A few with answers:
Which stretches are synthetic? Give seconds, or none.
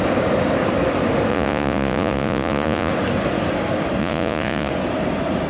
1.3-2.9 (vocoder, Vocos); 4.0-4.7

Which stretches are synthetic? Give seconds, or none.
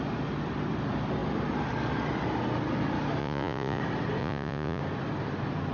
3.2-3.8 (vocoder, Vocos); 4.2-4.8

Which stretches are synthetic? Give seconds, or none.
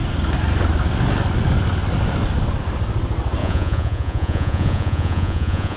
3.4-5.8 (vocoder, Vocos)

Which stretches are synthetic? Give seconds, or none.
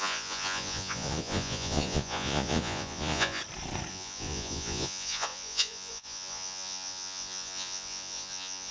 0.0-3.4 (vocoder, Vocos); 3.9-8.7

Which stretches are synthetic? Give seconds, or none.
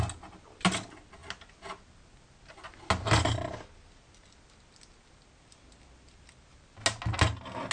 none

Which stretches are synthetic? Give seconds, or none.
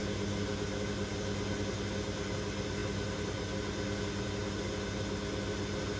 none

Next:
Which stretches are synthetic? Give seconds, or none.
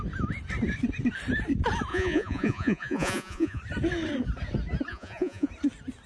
1.9-3.6 (vocoder, Vocos); 4.9-5.5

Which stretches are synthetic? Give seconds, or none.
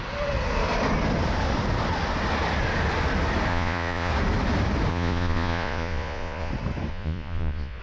3.5-4.1 (vocoder, Vocos); 4.9-6.5; 6.9-7.8